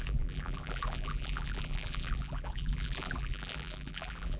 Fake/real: fake